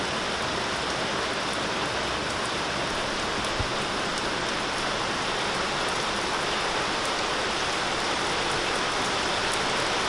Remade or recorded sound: recorded